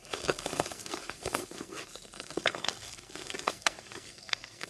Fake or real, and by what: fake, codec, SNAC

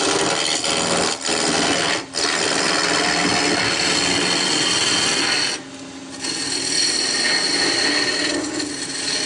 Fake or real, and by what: real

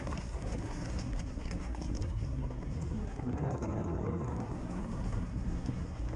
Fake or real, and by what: fake, codec, SNAC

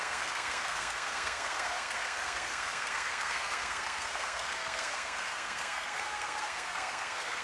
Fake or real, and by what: fake, codec, SNAC